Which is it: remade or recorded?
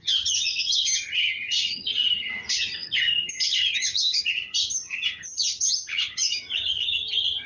remade